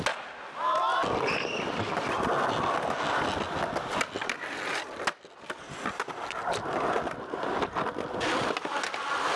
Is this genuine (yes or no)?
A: yes